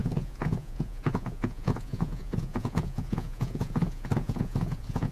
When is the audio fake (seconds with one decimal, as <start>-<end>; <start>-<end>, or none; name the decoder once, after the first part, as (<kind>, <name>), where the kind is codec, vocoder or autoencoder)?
0.0-5.1 (vocoder, Vocos)